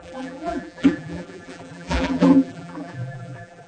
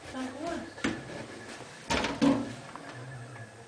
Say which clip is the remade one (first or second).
first